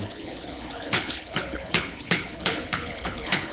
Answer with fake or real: fake